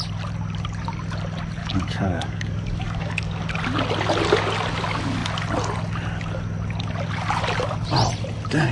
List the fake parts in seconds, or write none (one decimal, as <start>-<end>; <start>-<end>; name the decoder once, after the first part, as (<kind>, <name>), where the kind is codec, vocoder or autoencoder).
1.6-3.6 (codec, DAC)